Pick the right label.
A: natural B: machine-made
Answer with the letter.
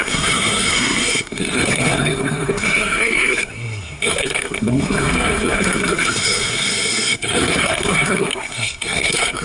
B